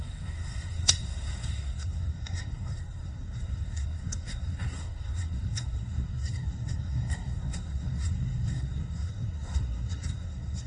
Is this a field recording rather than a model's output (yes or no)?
no